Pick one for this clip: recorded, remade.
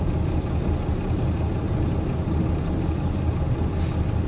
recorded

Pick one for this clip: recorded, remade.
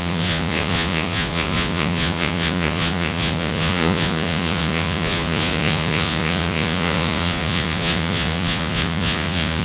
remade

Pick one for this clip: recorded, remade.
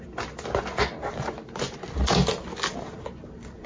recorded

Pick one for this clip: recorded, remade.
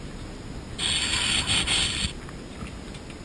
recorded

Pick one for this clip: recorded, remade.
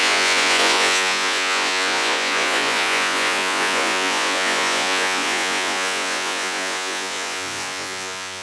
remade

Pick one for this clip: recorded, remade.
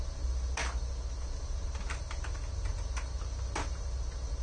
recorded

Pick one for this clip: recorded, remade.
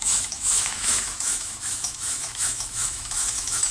remade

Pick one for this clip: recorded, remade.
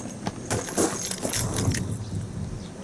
recorded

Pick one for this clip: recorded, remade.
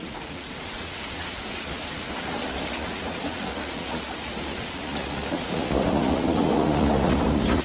remade